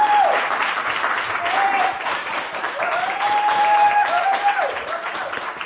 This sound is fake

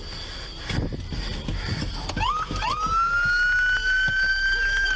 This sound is real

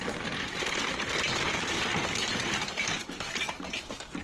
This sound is fake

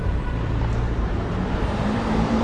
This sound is fake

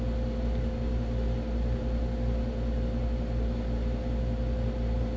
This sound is real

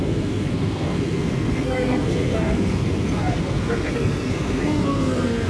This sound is fake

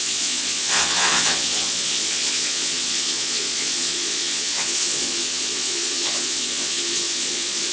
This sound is fake